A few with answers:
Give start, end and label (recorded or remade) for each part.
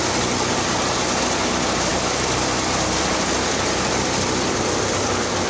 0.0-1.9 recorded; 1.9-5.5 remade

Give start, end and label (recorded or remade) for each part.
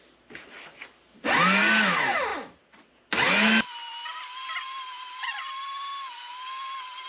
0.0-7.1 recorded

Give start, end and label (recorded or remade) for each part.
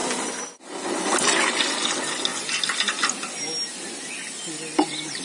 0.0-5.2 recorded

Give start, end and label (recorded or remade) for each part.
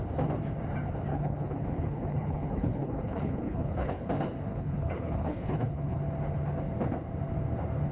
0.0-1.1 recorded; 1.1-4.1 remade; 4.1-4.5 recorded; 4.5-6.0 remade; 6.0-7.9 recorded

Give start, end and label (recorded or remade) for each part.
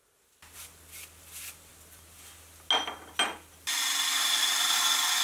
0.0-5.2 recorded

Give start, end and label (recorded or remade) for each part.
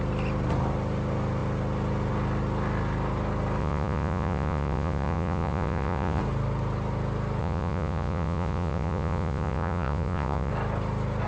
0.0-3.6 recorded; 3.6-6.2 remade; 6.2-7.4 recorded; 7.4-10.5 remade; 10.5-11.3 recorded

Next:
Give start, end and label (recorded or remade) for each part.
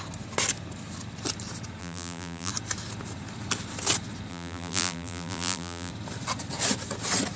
0.0-1.8 recorded; 1.8-2.5 remade; 2.5-4.3 recorded; 4.3-5.9 remade; 5.9-7.4 recorded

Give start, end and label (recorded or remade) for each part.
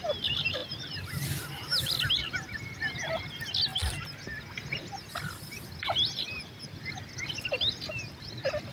0.0-8.7 recorded